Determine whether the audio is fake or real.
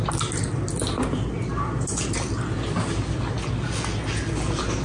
real